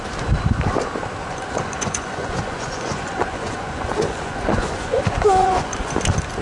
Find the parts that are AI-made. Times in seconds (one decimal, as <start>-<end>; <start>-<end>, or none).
1.2-5.0; 5.4-5.9